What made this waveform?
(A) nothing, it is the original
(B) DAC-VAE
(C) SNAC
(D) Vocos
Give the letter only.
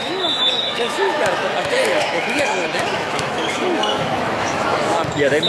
B